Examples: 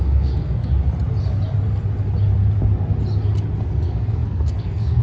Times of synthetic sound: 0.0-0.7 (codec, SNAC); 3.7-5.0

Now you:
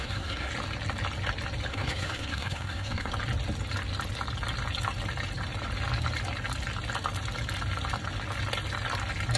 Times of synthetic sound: 0.0-0.5 (codec, SNAC); 1.7-3.1

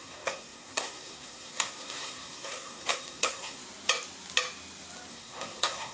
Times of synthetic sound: 0.0-3.6 (codec, SNAC); 5.1-5.9